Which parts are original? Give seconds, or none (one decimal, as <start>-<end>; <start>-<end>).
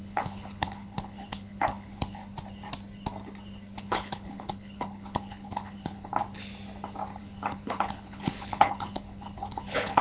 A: 2.2-3.8; 6.1-7.2